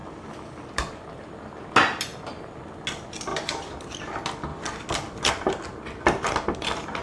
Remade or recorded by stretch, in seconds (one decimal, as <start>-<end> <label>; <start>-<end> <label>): 0.0-1.6 remade; 1.6-3.3 recorded; 3.3-4.0 remade; 4.0-7.0 recorded